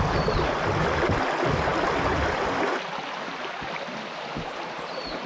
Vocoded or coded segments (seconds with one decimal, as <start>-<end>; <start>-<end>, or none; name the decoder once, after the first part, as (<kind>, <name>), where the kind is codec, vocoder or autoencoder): none